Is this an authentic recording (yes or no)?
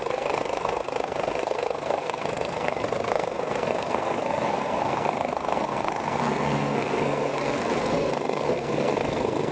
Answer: no